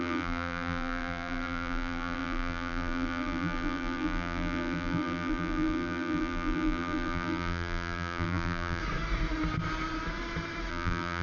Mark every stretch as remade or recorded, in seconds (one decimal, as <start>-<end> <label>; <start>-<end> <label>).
0.0-8.8 remade; 8.8-10.7 recorded; 10.7-11.2 remade